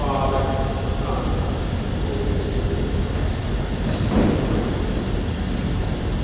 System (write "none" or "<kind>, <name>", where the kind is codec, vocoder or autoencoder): none